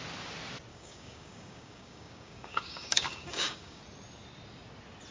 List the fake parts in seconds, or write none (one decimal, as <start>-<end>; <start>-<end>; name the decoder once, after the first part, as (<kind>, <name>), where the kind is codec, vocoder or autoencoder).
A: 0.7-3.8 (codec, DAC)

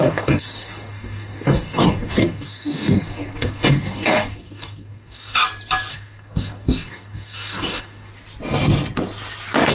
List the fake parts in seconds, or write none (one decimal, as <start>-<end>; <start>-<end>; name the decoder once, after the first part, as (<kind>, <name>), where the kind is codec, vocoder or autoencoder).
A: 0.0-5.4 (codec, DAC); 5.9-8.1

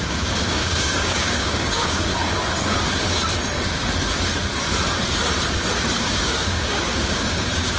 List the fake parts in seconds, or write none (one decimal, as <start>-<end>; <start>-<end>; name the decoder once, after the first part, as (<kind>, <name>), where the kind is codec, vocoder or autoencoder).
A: 0.0-2.1 (codec, DAC); 6.0-7.8